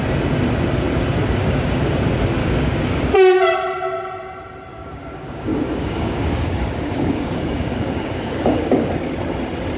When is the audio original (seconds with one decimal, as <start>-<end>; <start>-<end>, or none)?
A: 0.0-1.4; 2.0-2.4; 3.1-4.7; 8.9-9.8